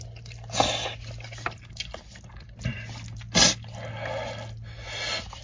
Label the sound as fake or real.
real